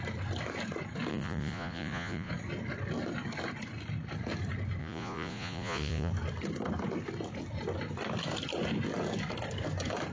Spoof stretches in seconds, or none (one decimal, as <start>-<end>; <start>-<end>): 1.1-2.3; 4.8-6.1